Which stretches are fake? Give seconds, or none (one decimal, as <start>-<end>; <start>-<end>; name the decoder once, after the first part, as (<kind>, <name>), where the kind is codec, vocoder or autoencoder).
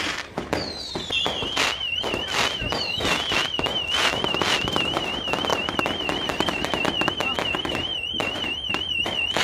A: none